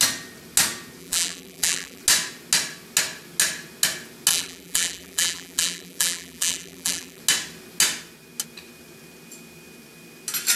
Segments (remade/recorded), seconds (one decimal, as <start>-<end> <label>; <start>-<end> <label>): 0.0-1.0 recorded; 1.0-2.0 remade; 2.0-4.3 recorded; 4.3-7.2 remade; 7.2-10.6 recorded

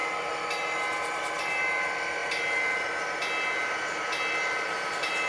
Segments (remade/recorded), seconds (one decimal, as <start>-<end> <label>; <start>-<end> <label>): 0.0-5.3 recorded

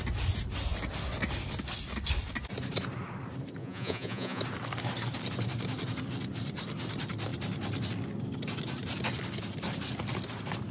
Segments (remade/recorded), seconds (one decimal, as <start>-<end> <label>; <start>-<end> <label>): 0.0-3.6 recorded; 3.6-4.4 remade; 4.4-10.7 recorded

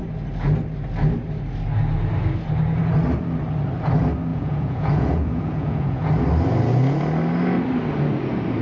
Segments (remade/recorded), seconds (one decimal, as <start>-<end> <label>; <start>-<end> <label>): 0.0-4.3 recorded; 4.3-6.1 remade; 6.1-8.6 recorded

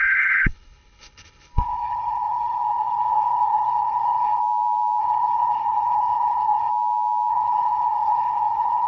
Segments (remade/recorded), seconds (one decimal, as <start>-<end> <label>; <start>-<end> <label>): 0.0-4.4 remade; 4.4-5.0 recorded; 5.0-6.7 remade; 6.7-7.3 recorded; 7.3-8.9 remade

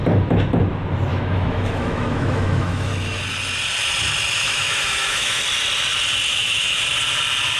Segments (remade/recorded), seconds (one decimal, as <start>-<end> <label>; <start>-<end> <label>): 0.0-1.1 recorded; 1.1-2.9 remade; 2.9-4.4 recorded; 4.4-5.4 remade; 5.4-6.3 recorded; 6.3-6.8 remade; 6.8-7.6 recorded

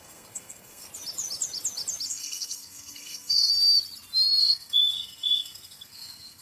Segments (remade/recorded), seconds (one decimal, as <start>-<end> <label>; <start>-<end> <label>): 0.0-0.9 remade; 0.9-2.1 recorded; 2.1-3.5 remade; 3.5-4.4 recorded; 4.4-6.4 remade

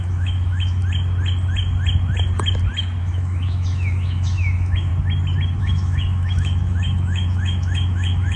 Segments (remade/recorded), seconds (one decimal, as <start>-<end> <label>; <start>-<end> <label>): 0.0-0.8 remade; 0.8-3.0 recorded; 3.0-4.9 remade; 4.9-5.6 recorded; 5.6-8.4 remade